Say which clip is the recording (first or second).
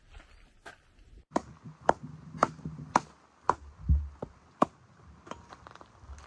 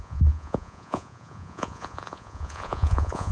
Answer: first